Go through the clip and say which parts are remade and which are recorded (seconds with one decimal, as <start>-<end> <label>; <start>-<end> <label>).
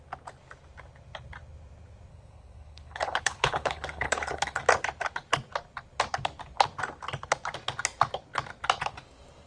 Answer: 0.0-2.1 recorded; 2.1-4.6 remade; 4.6-9.5 recorded